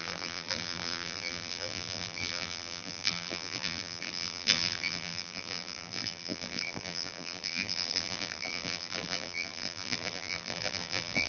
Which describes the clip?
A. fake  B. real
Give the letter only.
A